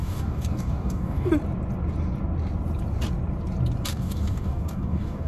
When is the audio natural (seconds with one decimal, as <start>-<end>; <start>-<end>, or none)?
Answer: 1.3-3.9